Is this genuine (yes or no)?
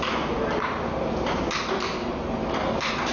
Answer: yes